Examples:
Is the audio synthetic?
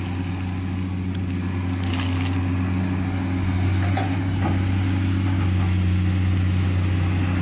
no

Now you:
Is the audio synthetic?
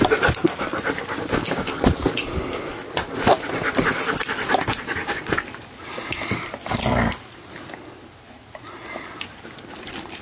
no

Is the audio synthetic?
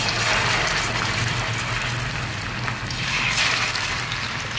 no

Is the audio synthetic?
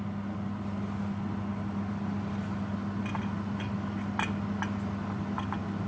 no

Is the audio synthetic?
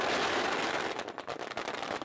no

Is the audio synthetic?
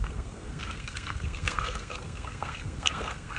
yes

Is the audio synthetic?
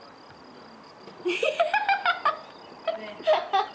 no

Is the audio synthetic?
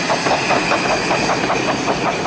no